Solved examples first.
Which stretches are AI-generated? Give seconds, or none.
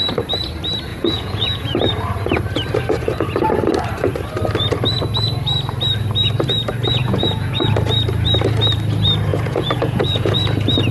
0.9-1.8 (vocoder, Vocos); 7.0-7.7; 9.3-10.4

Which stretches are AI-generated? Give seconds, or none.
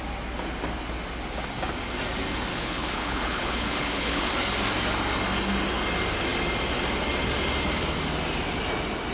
2.5-4.3 (codec, HILCodec)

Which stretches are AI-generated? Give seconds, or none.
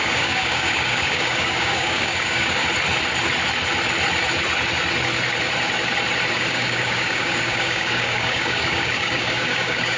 0.0-2.6 (codec, DAC); 6.3-10.0